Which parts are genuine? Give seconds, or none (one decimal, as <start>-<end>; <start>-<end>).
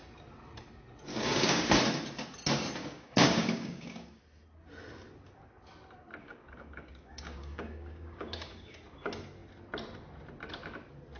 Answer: 0.0-1.1; 1.8-2.8; 4.2-6.2; 8.8-11.2